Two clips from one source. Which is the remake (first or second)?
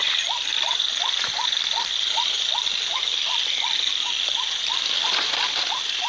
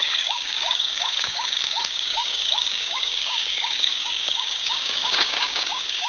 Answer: second